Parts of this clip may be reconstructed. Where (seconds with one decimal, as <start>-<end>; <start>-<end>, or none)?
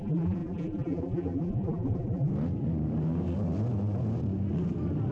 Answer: 0.0-2.3